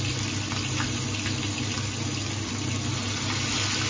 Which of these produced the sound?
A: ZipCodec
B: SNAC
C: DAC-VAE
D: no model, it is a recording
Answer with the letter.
D